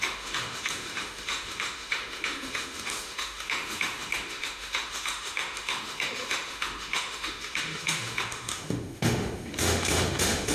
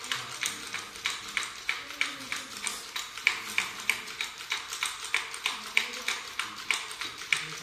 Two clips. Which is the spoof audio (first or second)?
first